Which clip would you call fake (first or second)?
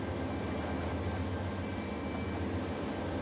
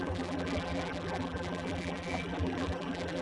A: second